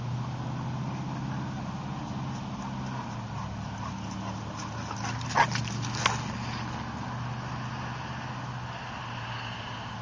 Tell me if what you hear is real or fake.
real